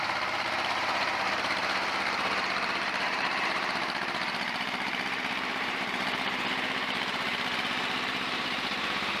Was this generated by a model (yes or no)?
yes